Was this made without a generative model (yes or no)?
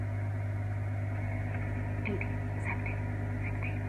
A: yes